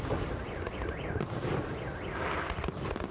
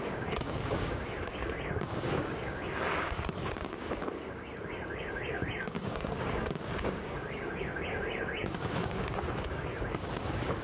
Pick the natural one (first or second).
first